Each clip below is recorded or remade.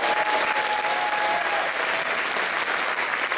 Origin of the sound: recorded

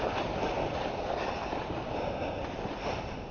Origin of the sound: recorded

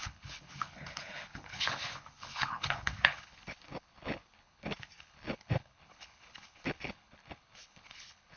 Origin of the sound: remade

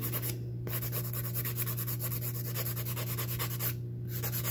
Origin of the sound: recorded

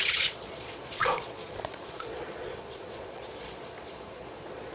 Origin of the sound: remade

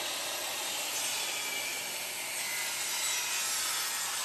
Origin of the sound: recorded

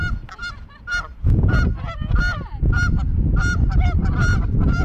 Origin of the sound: recorded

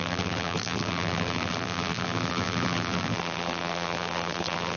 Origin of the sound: remade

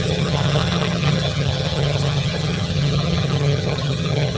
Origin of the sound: remade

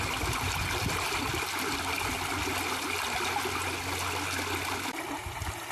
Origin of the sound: recorded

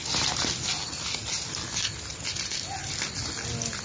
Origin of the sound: recorded